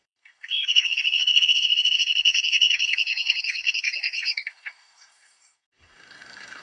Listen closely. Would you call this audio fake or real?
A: fake